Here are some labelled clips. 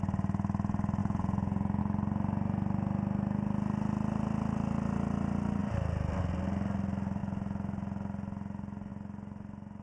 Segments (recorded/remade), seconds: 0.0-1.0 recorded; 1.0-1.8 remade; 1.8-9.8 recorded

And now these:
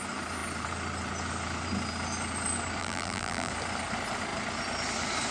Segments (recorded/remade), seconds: 0.0-2.8 recorded; 2.8-3.5 remade; 3.5-5.3 recorded

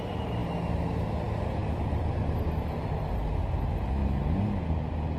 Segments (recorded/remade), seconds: 0.0-4.0 recorded; 4.0-5.2 remade